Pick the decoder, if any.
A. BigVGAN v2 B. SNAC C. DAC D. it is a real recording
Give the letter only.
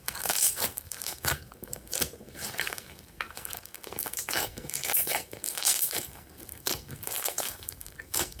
B